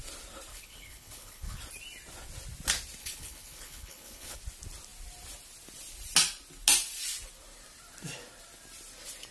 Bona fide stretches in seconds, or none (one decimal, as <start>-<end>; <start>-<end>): 0.0-0.5; 1.6-3.0; 4.4-9.3